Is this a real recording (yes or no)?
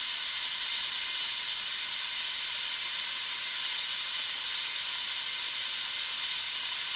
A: yes